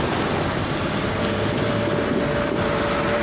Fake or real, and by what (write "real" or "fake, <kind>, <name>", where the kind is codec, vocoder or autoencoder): real